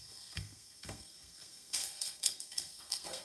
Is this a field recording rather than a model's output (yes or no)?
no